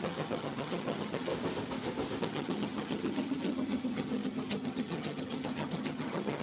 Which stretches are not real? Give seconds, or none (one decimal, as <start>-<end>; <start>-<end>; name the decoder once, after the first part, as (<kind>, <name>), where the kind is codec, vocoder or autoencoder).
0.0-1.3 (vocoder, HiFi-GAN); 2.2-6.4